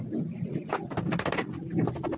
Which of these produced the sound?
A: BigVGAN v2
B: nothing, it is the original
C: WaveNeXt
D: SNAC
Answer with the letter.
B